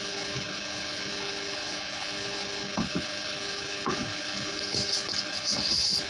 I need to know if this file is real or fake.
fake